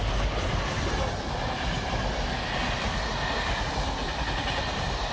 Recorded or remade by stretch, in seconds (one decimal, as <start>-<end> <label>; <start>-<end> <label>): 0.0-4.0 recorded; 4.0-5.1 remade